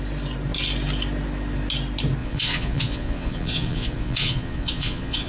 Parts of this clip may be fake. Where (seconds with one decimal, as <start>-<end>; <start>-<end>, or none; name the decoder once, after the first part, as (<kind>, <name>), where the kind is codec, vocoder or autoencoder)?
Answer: 2.2-5.3 (vocoder, Vocos)